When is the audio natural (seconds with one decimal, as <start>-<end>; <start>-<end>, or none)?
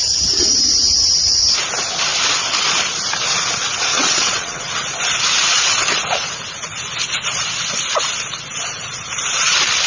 0.0-3.9; 4.7-9.9